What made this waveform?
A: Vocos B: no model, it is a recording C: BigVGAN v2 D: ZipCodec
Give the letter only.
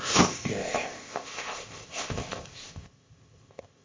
D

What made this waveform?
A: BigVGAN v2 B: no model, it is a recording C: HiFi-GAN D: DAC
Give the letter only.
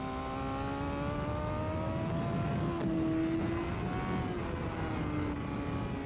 B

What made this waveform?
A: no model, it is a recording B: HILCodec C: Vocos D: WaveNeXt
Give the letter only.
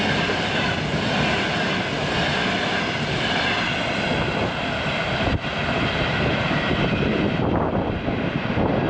A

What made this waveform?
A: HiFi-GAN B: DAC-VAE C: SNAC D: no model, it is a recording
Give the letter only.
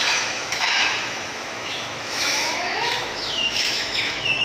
B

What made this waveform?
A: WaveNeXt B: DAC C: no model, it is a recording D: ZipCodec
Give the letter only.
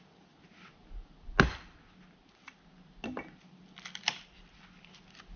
C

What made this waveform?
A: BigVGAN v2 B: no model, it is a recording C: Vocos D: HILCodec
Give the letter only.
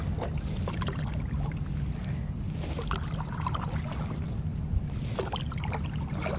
B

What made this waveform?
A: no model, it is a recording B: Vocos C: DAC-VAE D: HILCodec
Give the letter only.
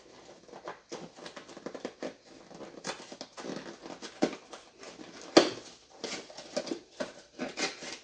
A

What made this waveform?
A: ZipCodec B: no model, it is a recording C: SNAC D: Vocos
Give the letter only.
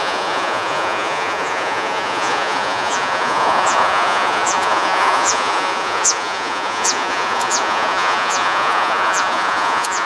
D